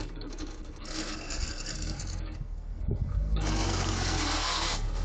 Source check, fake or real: fake